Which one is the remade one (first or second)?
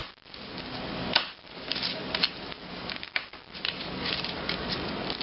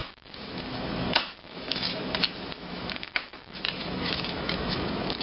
second